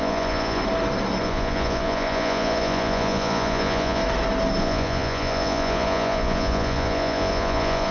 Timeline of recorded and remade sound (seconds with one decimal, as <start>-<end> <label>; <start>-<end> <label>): 0.0-0.6 remade; 0.6-1.2 recorded; 1.2-4.0 remade; 4.0-4.6 recorded; 4.6-7.9 remade